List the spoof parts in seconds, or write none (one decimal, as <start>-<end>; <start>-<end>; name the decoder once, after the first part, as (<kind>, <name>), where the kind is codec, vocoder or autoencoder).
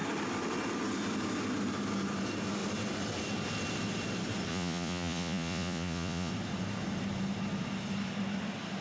4.5-6.3 (vocoder, Vocos)